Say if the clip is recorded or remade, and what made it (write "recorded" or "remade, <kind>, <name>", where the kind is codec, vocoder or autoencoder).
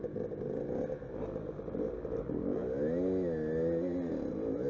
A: recorded